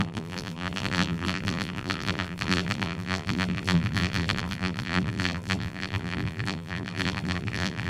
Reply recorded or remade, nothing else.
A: remade